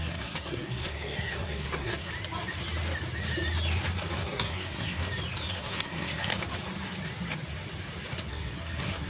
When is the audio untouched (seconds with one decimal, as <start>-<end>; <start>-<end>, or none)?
2.1-4.1; 5.0-5.5; 6.3-8.3